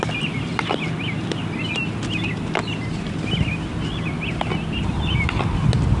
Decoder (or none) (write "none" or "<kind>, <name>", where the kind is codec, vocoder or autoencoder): none